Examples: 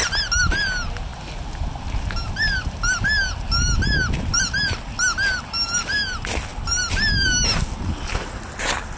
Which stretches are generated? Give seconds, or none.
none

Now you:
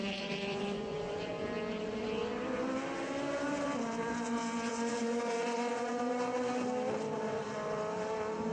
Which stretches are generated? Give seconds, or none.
0.0-1.3 (vocoder, Vocos); 4.7-6.0

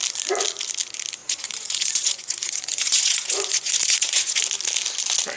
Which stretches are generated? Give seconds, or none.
1.2-4.4 (vocoder, Vocos)

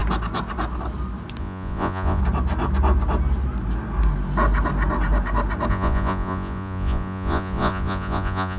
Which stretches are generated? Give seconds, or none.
1.4-2.2 (vocoder, Vocos); 5.7-8.6

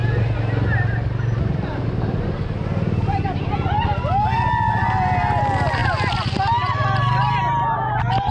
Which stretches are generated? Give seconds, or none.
none